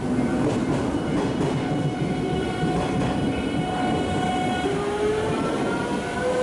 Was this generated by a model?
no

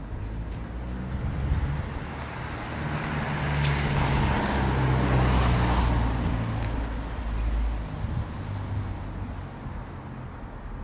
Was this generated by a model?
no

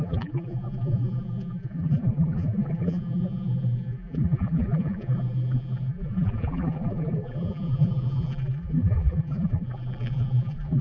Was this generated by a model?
yes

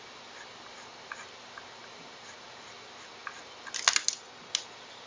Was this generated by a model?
no